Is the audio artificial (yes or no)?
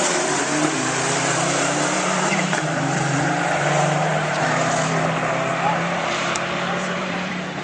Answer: yes